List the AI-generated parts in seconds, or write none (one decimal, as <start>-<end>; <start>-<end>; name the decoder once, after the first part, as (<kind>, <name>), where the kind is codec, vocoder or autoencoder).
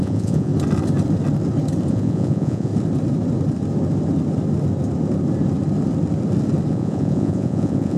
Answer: 0.0-0.5 (vocoder, Vocos); 1.9-2.7; 6.7-8.0